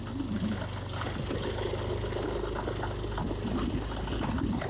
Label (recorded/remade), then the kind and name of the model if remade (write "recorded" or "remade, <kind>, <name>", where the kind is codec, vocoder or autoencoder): recorded